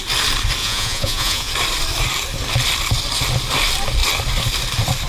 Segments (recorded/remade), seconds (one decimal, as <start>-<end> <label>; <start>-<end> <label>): 0.0-0.6 recorded; 0.6-1.5 remade; 1.5-5.1 recorded